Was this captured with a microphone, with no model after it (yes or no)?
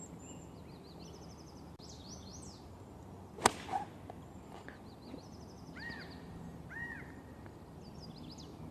yes